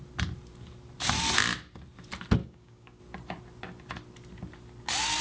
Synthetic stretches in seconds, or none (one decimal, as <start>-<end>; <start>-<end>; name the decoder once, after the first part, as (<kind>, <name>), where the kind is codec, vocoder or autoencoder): 2.4-3.0 (codec, DAC)